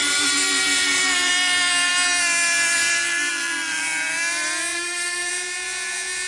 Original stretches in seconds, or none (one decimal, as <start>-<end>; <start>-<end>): 1.3-4.7; 5.3-6.3